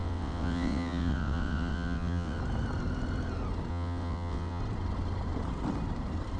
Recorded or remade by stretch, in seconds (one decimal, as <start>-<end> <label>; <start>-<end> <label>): 0.0-2.4 remade; 2.4-3.7 recorded; 3.7-4.6 remade; 4.6-6.4 recorded